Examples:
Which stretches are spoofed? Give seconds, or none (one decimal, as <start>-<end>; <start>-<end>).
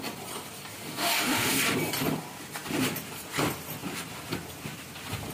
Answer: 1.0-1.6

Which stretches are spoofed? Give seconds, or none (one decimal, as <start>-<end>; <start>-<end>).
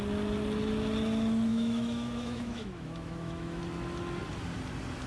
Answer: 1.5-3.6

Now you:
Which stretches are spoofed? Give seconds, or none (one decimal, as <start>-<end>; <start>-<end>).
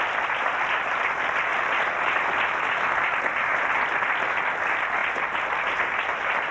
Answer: none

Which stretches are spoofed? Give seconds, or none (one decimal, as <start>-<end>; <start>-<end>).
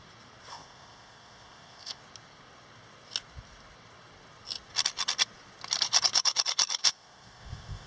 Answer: 0.5-2.0; 6.8-7.9